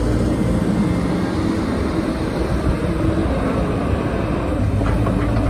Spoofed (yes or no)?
no